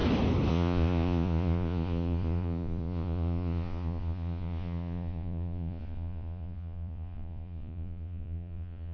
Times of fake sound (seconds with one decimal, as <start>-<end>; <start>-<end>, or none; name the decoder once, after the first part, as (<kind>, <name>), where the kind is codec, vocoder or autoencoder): 0.5-8.9 (vocoder, Vocos)